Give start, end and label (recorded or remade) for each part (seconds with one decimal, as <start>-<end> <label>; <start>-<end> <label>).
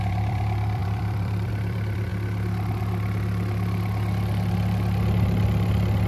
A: 0.0-2.1 remade; 2.1-6.1 recorded